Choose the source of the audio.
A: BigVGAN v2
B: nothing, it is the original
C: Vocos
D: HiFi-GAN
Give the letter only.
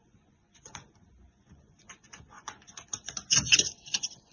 C